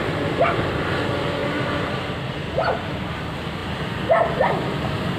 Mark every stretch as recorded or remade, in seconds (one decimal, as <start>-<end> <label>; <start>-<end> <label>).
0.0-5.2 recorded

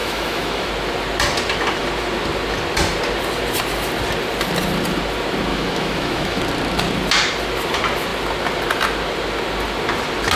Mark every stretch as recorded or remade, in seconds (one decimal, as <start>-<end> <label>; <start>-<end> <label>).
0.0-0.7 remade; 0.7-5.5 recorded; 5.5-6.4 remade; 6.4-10.4 recorded